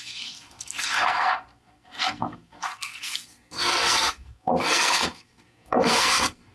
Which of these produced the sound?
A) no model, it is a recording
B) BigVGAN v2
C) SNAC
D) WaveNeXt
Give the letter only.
C